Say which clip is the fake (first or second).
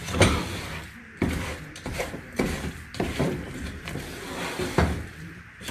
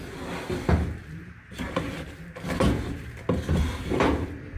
first